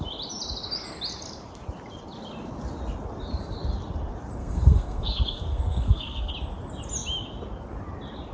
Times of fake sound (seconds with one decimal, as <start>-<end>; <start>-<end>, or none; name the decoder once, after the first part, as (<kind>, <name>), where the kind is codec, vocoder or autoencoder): 4.4-6.3 (codec, SNAC)

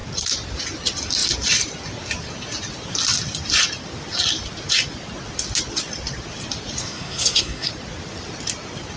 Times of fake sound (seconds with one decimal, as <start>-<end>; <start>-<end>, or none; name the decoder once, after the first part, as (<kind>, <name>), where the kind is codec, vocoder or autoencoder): 6.8-7.7 (codec, SNAC)

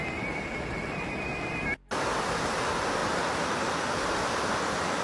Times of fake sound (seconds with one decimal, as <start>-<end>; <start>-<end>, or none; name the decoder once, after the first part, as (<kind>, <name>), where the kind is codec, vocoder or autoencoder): none

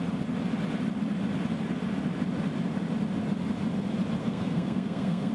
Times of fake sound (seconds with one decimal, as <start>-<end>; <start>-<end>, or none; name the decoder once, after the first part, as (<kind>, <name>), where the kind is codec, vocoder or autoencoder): 4.2-5.3 (codec, SNAC)

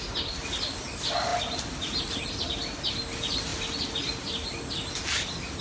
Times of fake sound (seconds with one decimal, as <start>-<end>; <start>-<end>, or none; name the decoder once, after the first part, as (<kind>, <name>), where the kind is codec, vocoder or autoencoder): none